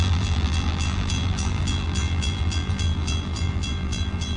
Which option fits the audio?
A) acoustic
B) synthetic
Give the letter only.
B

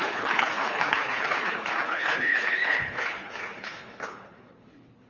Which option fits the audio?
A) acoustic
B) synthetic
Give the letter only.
B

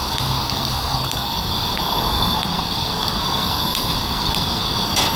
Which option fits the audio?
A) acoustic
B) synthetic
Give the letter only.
B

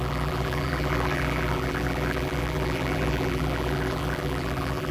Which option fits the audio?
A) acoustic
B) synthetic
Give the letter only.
B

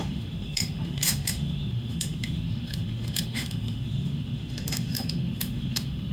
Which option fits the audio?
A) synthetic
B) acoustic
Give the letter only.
A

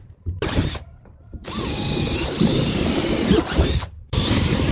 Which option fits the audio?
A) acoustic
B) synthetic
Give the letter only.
B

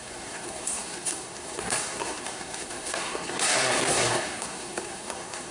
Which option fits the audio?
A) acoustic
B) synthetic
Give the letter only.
B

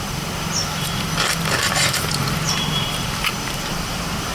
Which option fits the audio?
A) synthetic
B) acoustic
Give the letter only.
A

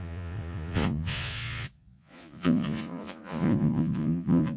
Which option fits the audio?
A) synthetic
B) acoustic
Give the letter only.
A